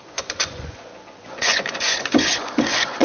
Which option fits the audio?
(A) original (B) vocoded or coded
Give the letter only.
B